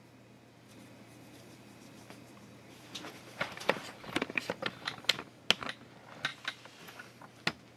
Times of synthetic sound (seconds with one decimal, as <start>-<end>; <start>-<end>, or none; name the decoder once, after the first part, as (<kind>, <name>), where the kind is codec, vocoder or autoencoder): 0.7-5.1 (vocoder, BigVGAN v2)